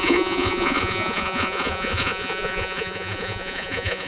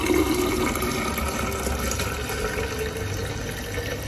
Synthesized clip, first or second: first